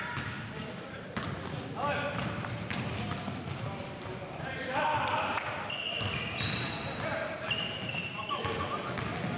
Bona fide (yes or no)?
yes